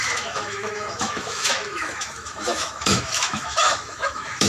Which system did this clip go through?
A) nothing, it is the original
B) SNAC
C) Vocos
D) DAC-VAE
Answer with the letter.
D